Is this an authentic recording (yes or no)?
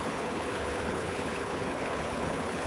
no